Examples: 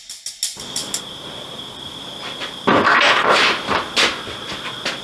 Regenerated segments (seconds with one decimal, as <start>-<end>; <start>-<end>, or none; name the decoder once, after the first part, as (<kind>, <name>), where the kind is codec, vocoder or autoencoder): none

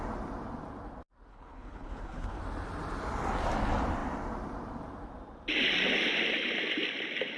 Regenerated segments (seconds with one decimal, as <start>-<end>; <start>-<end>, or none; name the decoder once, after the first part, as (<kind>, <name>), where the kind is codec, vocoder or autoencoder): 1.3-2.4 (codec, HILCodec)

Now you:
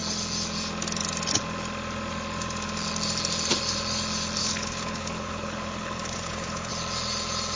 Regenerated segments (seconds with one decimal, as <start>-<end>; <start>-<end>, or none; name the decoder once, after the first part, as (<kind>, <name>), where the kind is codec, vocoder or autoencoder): 4.4-6.7 (codec, HILCodec)

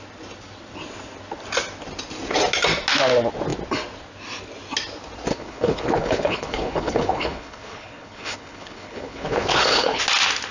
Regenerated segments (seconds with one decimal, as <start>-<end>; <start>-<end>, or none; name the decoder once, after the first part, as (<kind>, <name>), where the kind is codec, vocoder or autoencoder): 5.3-10.0 (codec, HILCodec)